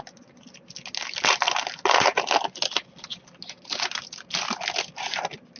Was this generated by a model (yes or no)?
no